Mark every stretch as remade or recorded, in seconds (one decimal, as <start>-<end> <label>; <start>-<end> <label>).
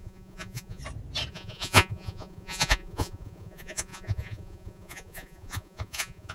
0.0-0.8 remade; 0.8-1.3 recorded; 1.3-6.3 remade